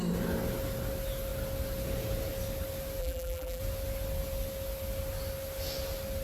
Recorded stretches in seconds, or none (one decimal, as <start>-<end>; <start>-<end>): 0.0-3.0; 3.6-6.2